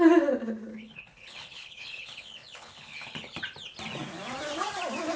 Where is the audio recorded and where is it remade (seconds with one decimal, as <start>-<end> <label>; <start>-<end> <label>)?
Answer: 0.0-0.7 recorded; 0.7-3.4 remade; 3.4-5.2 recorded